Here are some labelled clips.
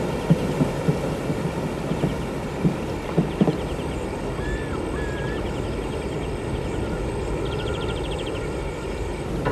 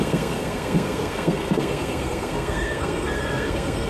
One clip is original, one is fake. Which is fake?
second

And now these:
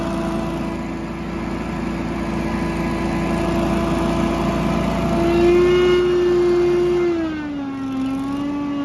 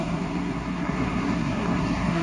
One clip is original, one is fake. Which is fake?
second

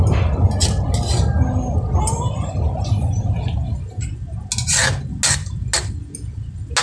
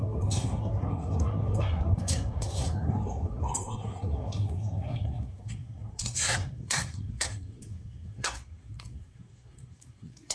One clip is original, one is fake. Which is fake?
second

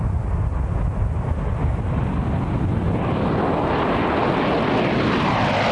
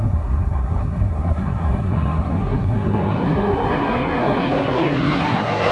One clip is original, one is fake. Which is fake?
second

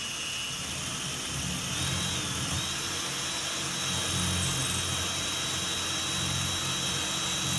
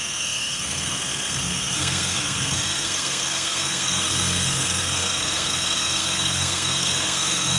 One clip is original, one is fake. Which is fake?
second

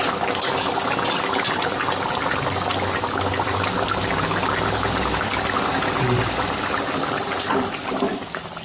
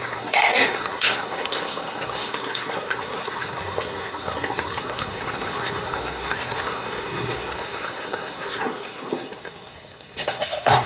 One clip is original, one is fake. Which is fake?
second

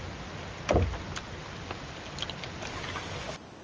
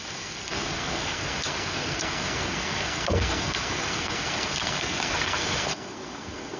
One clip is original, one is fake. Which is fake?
second